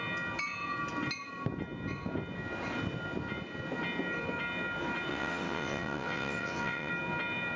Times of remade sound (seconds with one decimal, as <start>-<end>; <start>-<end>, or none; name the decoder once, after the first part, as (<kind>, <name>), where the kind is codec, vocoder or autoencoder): 5.1-6.9 (vocoder, WaveNeXt)